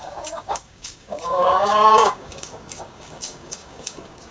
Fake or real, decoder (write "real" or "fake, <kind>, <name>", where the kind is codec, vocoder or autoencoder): fake, codec, DAC